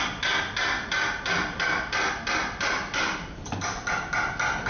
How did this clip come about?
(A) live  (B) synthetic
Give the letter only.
A